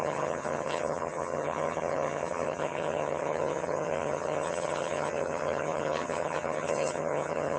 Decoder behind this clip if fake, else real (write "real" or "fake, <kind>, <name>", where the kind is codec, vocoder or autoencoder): fake, vocoder, HiFi-GAN